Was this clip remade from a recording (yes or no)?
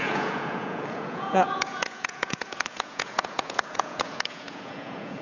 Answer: yes